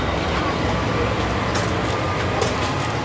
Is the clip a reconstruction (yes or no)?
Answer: yes